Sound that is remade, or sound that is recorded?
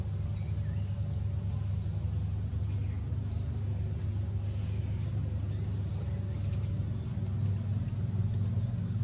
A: recorded